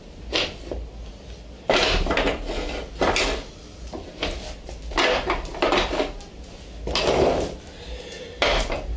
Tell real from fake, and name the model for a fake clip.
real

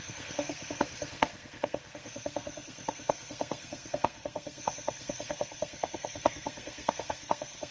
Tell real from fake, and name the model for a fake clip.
fake, codec, SNAC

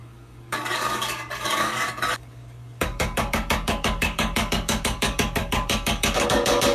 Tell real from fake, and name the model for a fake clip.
fake, codec, DAC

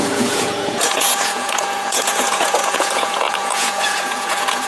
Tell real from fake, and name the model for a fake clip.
fake, vocoder, Vocos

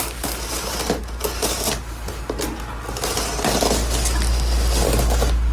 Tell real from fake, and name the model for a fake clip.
real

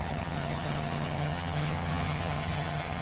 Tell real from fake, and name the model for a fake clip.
fake, vocoder, HiFi-GAN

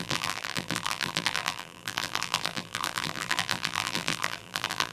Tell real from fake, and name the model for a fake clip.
fake, vocoder, BigVGAN v2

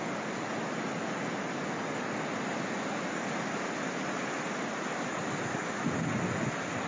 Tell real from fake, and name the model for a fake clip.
real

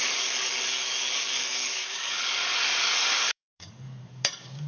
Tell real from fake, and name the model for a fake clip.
fake, codec, DAC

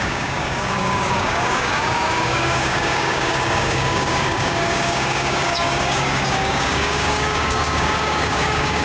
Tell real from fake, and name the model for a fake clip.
fake, codec, DAC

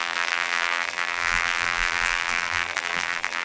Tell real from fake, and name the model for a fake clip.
fake, vocoder, BigVGAN v2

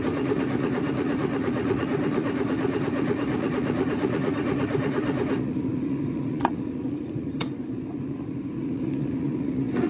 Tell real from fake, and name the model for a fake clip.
fake, vocoder, Vocos